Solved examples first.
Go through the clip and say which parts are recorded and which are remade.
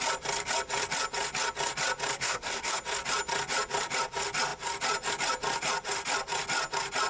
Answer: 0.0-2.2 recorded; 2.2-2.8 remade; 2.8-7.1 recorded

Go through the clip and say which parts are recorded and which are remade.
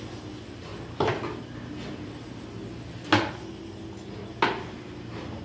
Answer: 0.0-5.4 recorded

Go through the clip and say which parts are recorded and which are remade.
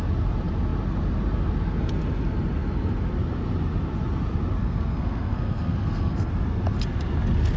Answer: 0.0-4.6 recorded; 4.6-6.3 remade; 6.3-7.6 recorded